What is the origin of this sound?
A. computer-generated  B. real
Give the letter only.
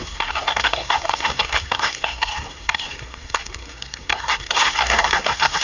A